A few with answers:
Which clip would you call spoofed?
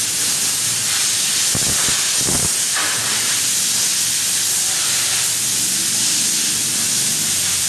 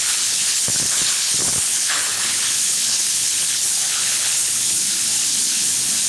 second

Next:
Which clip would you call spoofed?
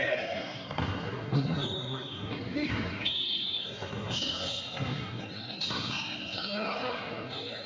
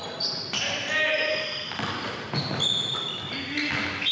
first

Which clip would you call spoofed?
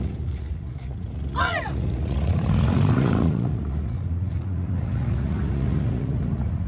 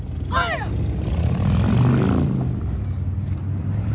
first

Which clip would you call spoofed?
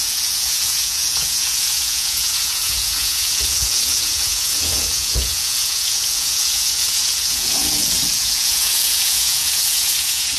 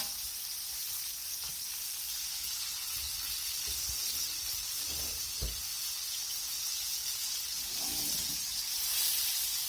first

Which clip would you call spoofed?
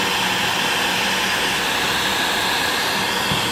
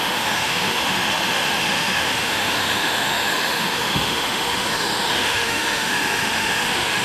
second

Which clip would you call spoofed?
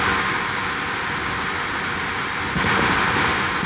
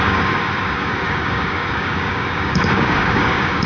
second